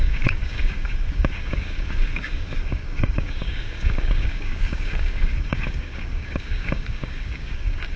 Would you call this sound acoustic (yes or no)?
no